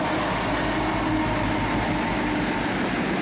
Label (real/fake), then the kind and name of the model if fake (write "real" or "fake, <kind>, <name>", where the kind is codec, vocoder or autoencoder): real